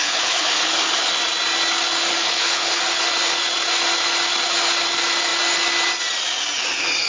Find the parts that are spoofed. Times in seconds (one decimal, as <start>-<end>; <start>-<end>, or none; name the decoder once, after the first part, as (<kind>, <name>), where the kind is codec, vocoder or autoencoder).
0.0-1.1 (codec, HILCodec); 2.1-2.8